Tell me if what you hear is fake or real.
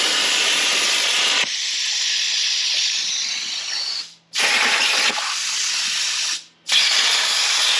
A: real